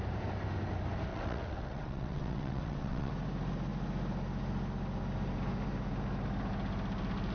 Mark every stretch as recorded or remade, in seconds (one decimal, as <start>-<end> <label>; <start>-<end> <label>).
0.0-1.1 recorded; 1.1-3.1 remade; 3.1-7.3 recorded